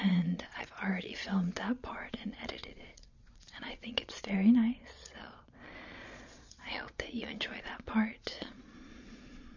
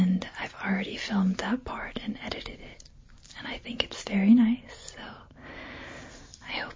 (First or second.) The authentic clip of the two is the second